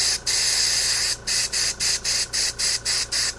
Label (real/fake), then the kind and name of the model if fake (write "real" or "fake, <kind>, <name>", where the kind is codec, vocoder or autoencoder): real